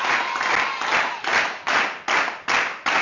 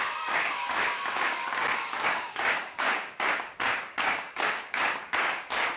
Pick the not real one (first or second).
second